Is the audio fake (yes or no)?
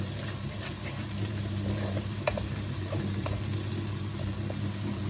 yes